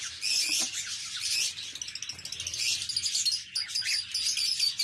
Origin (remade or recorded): recorded